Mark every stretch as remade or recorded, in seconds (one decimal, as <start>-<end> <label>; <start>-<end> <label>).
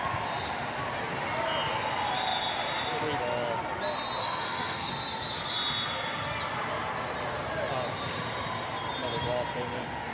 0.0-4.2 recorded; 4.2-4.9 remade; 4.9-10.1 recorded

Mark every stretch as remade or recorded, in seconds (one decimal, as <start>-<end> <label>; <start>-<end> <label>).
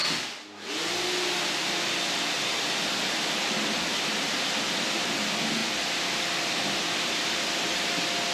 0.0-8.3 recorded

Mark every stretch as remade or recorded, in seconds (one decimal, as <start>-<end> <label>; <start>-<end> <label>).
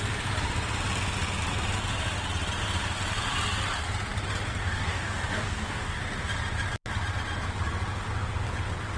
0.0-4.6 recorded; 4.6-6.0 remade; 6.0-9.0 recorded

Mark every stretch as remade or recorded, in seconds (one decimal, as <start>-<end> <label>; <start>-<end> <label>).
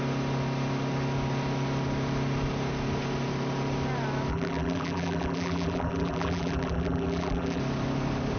0.0-4.3 recorded; 4.3-7.6 remade; 7.6-8.4 recorded